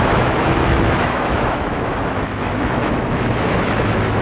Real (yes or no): no